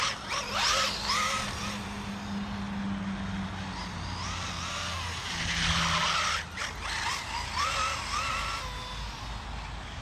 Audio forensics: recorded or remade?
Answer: recorded